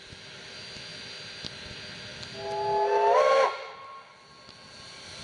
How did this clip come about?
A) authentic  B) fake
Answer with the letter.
A